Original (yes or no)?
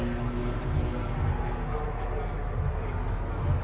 yes